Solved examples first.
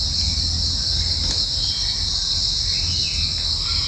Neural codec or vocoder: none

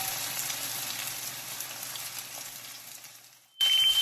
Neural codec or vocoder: vocoder, BigVGAN v2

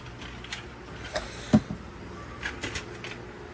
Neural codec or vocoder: none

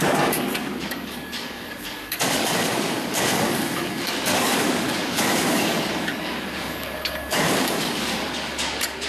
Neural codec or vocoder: codec, DAC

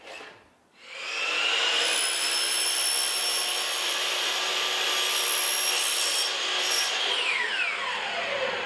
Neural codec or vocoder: none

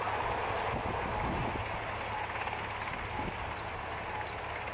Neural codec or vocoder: none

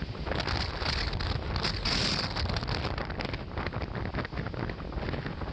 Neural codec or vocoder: none